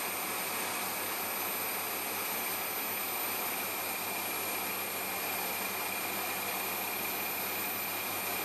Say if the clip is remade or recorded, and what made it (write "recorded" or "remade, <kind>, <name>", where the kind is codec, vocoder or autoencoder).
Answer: recorded